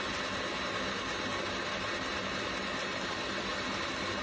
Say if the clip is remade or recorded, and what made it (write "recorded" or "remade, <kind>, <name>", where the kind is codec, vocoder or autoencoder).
recorded